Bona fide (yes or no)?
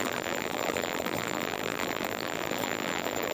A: no